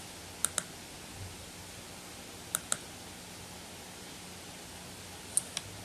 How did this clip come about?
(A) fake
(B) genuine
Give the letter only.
B